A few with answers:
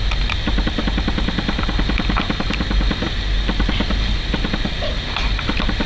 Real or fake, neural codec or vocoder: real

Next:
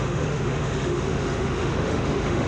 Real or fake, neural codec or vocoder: fake, autoencoder, DAC-VAE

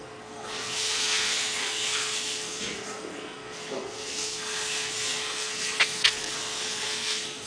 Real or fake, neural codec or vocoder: fake, codec, SNAC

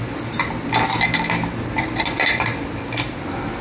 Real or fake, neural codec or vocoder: real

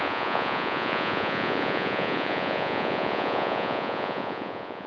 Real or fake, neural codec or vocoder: fake, vocoder, Vocos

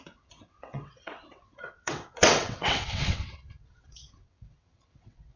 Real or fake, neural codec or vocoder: fake, vocoder, WaveNeXt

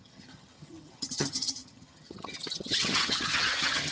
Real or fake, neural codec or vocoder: fake, vocoder, HiFi-GAN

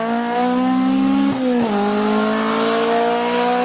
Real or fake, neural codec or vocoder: real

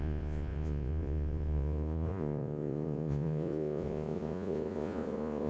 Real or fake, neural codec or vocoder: fake, vocoder, Vocos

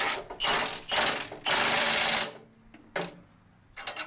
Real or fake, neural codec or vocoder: real